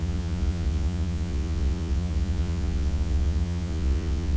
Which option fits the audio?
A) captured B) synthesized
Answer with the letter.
B